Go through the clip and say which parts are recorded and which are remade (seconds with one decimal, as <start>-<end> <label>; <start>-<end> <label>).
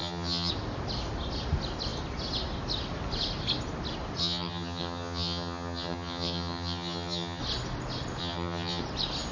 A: 0.0-0.5 remade; 0.5-4.2 recorded; 4.2-7.4 remade; 7.4-8.2 recorded; 8.2-8.8 remade; 8.8-9.3 recorded